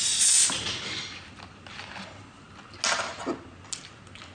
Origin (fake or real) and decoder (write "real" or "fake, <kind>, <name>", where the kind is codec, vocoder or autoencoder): real